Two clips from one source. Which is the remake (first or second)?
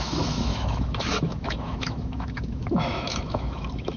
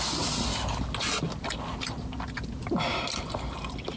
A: first